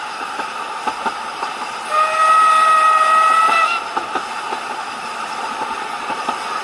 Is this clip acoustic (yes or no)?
yes